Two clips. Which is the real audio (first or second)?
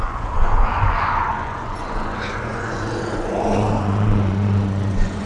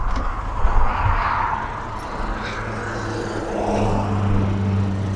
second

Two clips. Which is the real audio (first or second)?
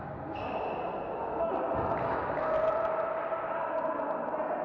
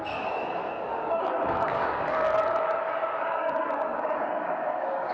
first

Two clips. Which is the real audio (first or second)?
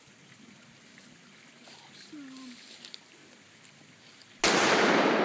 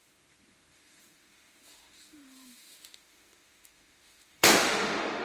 first